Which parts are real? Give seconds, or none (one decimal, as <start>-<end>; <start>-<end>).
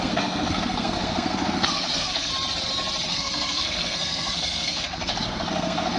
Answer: 2.3-3.1